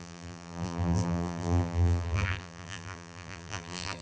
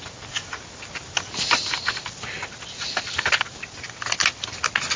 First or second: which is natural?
second